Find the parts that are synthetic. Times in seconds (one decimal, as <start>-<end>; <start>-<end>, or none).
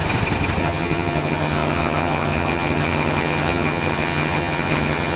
0.6-5.2